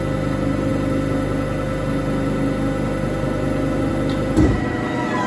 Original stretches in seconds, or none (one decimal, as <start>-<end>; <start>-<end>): 0.0-5.3